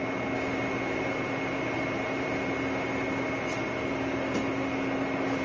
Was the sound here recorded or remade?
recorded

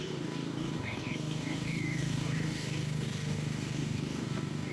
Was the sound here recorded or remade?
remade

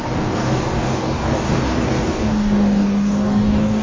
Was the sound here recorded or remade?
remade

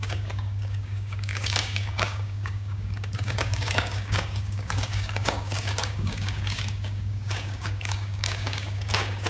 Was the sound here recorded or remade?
remade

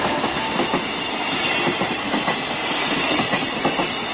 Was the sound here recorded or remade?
recorded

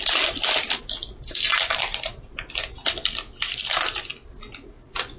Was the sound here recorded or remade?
recorded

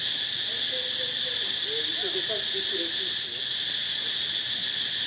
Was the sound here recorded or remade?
recorded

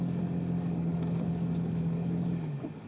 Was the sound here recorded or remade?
remade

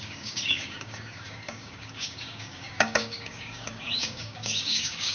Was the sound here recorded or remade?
remade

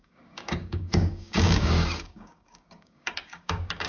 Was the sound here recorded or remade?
remade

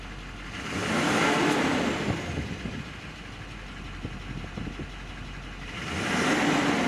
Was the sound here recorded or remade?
recorded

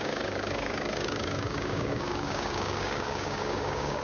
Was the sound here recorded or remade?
remade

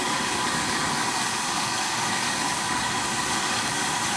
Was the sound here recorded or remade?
remade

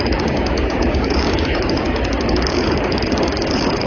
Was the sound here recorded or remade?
remade